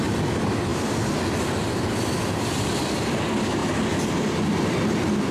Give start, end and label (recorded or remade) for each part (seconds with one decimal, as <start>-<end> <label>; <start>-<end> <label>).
0.0-5.3 recorded